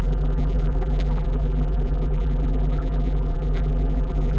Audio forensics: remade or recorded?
remade